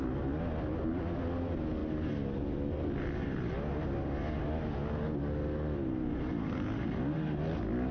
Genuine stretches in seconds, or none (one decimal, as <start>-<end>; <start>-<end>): 0.0-7.9